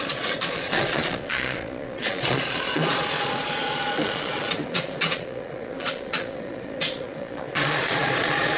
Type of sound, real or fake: fake